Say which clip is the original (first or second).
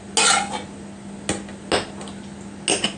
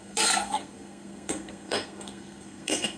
first